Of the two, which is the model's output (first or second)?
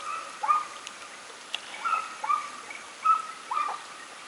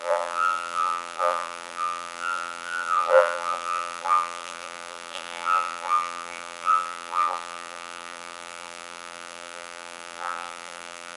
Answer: second